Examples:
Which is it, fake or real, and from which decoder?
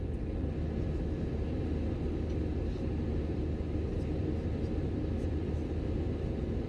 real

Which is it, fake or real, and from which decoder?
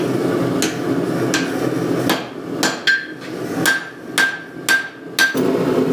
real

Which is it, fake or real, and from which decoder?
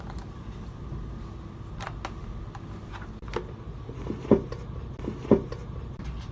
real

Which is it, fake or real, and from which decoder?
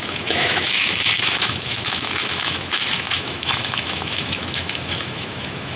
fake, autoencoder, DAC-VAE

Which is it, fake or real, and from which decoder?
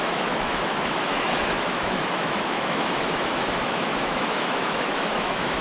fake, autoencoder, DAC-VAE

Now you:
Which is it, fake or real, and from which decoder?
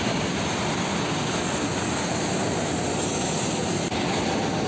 real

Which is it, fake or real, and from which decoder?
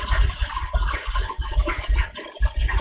real